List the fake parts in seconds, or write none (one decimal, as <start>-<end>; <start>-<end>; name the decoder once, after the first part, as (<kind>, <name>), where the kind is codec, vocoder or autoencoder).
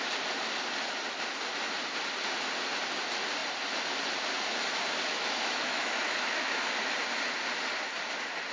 5.1-6.7 (autoencoder, DAC-VAE)